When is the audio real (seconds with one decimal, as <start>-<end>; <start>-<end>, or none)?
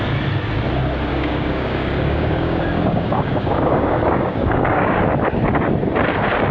0.0-1.1; 5.0-6.5